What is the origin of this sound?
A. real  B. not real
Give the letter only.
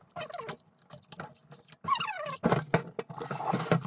A